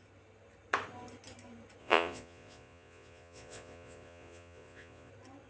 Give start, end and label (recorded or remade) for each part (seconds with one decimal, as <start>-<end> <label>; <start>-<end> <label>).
0.0-1.8 recorded; 1.8-5.1 remade; 5.1-5.5 recorded